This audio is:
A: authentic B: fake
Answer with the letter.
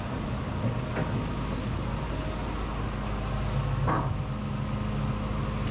A